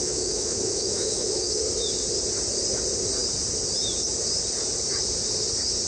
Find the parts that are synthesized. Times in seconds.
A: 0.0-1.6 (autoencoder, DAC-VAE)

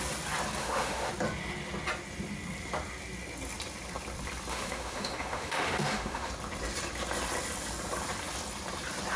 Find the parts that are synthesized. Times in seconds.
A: 0.6-1.1 (autoencoder, DAC-VAE); 4.5-6.3

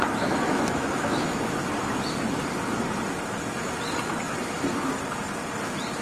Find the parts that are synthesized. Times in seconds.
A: 0.5-1.7 (autoencoder, DAC-VAE)

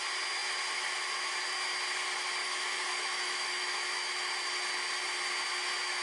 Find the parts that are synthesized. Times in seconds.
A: 2.4-4.1 (autoencoder, DAC-VAE)

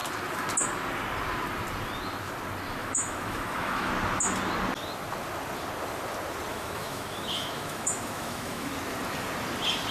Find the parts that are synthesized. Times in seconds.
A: 2.8-3.9 (autoencoder, DAC-VAE); 6.5-8.7

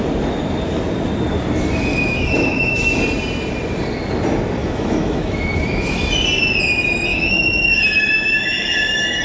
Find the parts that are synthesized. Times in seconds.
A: 1.9-3.0 (autoencoder, DAC-VAE); 4.6-6.1; 7.1-9.2

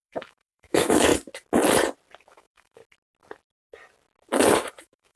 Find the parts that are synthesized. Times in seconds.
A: 0.0-1.1 (autoencoder, DAC-VAE); 2.3-2.8; 4.8-5.2

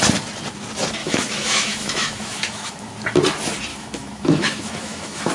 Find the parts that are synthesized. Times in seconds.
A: 1.0-2.9 (autoencoder, DAC-VAE); 3.7-5.3